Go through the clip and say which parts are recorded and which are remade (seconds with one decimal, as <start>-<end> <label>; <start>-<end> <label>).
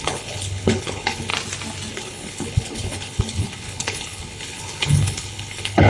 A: 0.0-1.3 remade; 1.3-1.9 recorded; 1.9-5.9 remade